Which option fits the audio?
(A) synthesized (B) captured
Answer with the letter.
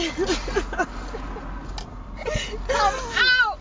B